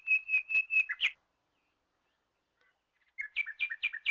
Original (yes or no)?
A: yes